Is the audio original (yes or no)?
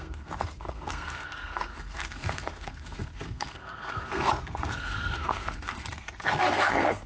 no